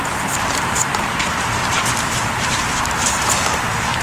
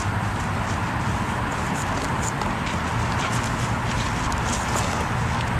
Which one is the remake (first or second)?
first